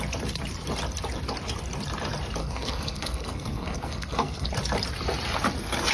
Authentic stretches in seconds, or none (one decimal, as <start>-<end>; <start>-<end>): 0.0-2.4; 4.5-5.9